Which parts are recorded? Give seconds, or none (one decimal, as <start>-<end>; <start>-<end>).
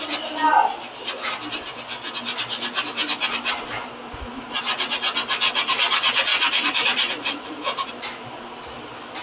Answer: 0.0-6.3; 7.9-9.2